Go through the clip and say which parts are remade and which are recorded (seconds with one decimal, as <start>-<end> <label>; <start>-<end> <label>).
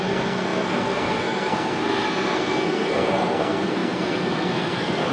0.0-5.1 remade